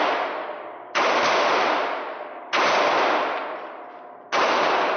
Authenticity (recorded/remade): recorded